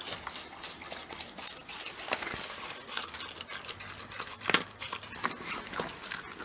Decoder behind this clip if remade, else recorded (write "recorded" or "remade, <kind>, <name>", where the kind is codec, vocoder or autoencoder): recorded